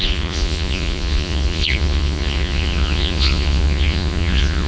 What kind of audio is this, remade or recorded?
remade